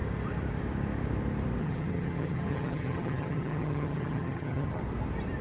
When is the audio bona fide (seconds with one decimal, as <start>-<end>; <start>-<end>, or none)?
0.0-1.6; 4.8-5.4